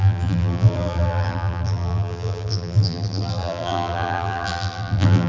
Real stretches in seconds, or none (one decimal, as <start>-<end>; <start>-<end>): none

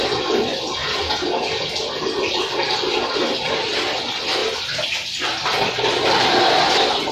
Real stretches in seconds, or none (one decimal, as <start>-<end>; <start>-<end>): 0.0-7.1